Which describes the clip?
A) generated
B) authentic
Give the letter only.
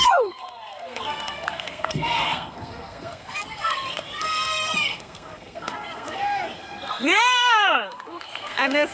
A